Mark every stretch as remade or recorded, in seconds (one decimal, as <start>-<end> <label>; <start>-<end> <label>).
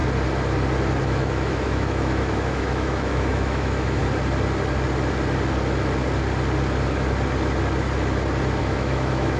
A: 0.0-1.0 recorded; 1.0-4.0 remade; 4.0-8.6 recorded; 8.6-9.4 remade